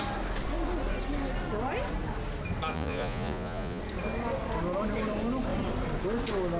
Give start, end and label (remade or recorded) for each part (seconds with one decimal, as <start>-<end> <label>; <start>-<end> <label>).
0.0-2.7 recorded; 2.7-3.8 remade; 3.8-6.6 recorded